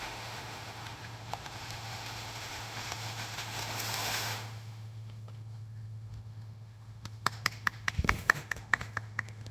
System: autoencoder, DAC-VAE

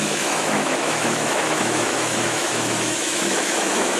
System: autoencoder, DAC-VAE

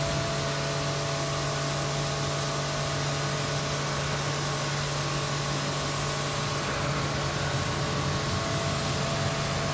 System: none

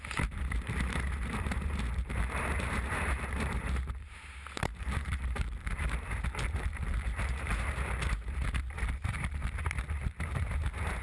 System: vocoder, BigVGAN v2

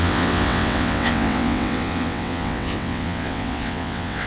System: vocoder, WaveNeXt